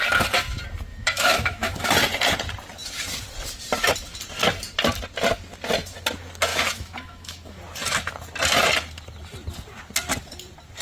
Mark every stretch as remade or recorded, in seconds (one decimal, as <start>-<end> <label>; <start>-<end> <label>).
0.0-0.9 recorded; 0.9-1.9 remade; 1.9-6.5 recorded; 6.5-7.6 remade; 7.6-10.8 recorded